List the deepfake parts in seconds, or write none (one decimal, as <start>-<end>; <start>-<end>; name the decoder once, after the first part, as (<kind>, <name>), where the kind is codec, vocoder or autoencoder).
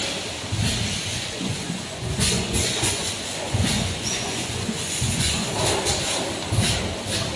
1.1-5.5 (vocoder, Vocos)